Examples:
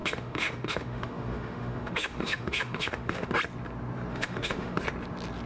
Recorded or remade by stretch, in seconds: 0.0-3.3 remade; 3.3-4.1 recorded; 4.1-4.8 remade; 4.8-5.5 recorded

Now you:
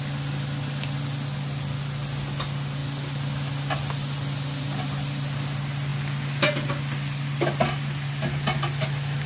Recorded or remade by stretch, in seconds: 0.0-9.3 recorded

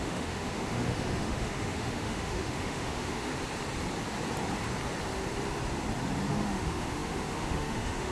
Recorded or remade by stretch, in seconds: 0.0-3.3 remade; 3.3-6.3 recorded; 6.3-8.1 remade